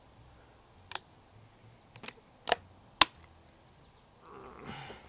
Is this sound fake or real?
real